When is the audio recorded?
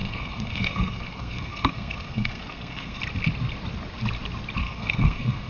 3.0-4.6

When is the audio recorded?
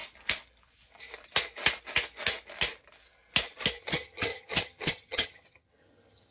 0.0-3.8